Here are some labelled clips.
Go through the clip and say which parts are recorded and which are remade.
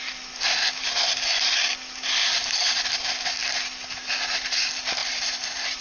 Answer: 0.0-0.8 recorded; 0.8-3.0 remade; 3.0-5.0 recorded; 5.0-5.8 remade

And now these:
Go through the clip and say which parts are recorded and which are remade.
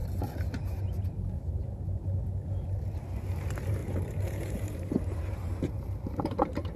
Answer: 0.0-3.0 recorded; 3.0-6.8 remade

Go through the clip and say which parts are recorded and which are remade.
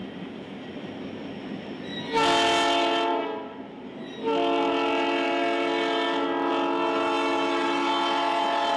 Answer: 0.0-0.6 remade; 0.6-8.8 recorded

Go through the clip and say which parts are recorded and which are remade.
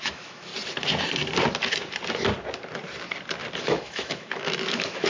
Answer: 0.0-0.5 remade; 0.5-3.6 recorded; 3.6-5.1 remade